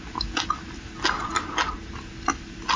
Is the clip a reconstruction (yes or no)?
no